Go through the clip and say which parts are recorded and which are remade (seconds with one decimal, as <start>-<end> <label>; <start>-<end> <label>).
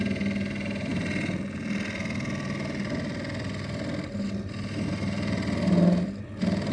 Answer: 0.0-6.7 recorded